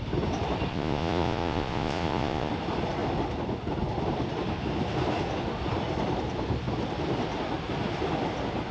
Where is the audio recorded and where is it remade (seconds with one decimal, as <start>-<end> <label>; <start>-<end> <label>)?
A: 0.0-0.7 recorded; 0.7-2.5 remade; 2.5-8.7 recorded